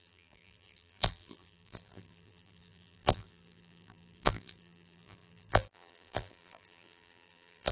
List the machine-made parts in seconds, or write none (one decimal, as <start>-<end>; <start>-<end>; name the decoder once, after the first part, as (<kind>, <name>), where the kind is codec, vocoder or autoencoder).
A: 0.0-7.7 (vocoder, BigVGAN v2)